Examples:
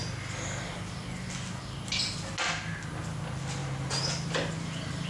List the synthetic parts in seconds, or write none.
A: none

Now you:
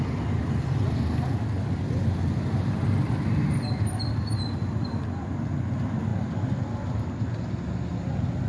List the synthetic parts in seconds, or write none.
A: none

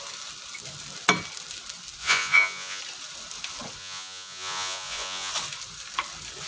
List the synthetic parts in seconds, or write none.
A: 2.0-2.8 (vocoder, Vocos); 3.8-5.3

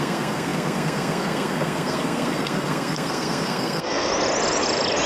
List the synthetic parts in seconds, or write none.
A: 0.0-4.1 (codec, SNAC)

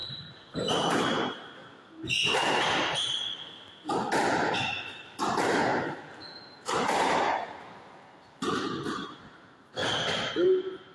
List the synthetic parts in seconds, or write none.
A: 0.0-1.6 (vocoder, BigVGAN v2); 4.1-10.9

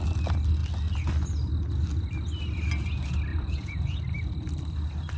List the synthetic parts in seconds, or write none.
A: 3.3-4.0 (vocoder, Vocos)